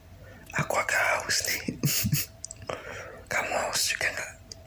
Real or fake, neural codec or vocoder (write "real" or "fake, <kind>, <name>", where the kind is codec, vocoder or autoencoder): fake, vocoder, BigVGAN v2